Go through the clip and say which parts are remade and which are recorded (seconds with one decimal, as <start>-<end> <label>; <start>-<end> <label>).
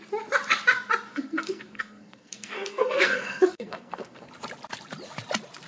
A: 0.0-1.1 recorded; 1.1-4.3 remade; 4.3-5.7 recorded